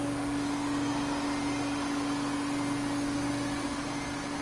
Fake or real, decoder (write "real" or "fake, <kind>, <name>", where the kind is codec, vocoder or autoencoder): real